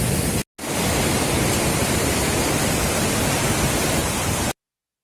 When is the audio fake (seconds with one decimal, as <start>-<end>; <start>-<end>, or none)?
4.0-4.5